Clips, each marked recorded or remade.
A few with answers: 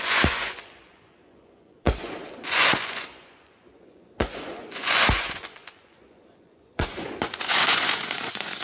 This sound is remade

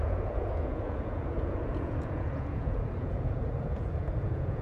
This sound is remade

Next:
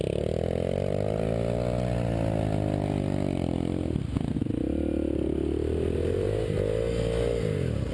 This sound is recorded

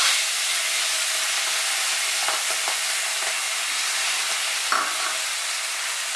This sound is recorded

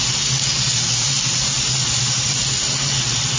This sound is recorded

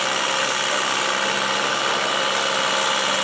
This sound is recorded